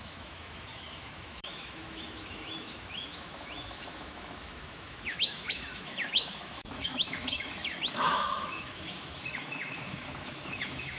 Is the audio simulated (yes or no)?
yes